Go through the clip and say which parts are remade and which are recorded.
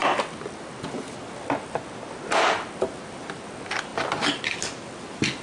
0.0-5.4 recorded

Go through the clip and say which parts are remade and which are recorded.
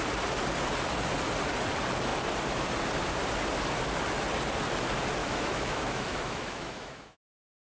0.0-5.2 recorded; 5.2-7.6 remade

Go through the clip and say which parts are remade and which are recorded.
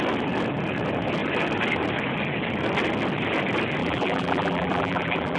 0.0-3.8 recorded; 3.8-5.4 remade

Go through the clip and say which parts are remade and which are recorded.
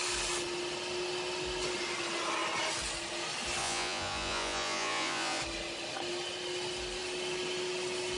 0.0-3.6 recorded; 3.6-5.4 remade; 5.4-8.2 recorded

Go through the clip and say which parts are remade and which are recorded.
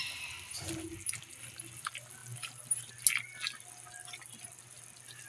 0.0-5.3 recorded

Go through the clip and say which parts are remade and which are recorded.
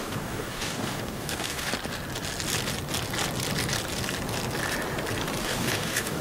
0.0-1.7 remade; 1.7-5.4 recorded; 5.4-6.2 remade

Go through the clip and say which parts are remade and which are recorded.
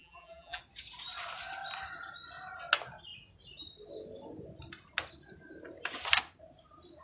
0.0-0.6 remade; 0.6-7.0 recorded